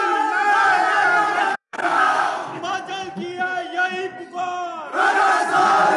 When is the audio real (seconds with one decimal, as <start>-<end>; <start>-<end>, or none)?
0.0-1.5; 2.6-6.0